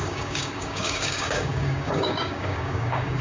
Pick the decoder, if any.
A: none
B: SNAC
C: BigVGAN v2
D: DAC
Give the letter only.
D